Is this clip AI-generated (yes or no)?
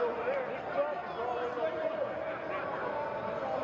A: no